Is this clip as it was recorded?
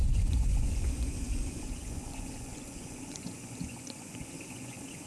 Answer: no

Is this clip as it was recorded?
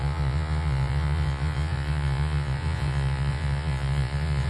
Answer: no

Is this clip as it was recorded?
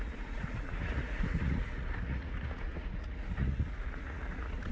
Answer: no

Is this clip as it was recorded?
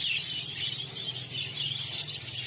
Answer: yes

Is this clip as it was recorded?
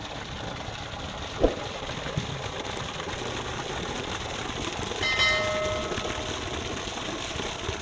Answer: yes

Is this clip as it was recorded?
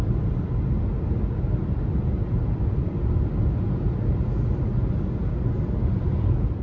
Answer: yes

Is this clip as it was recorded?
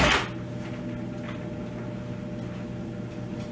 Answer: yes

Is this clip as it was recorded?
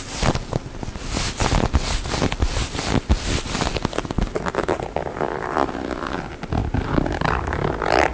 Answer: yes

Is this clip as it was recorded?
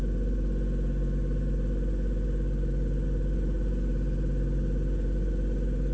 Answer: yes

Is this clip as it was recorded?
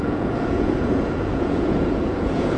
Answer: no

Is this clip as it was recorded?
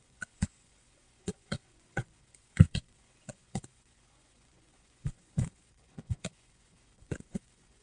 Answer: no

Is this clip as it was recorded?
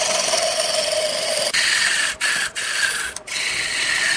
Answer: yes